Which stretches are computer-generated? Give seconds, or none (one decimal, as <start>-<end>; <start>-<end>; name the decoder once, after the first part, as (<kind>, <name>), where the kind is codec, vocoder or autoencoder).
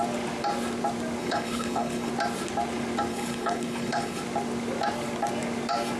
1.2-2.1 (codec, HILCodec); 3.1-4.2